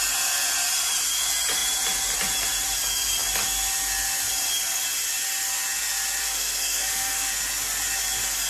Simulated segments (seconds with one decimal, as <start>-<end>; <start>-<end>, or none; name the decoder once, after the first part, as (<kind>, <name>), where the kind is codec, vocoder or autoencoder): 6.2-7.3 (codec, SNAC)